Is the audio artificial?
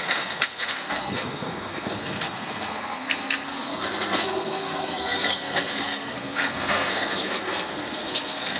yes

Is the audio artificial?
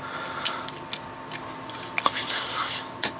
no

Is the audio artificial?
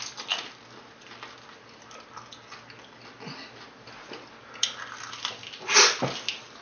no